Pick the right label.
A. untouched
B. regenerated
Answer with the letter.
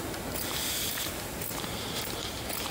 A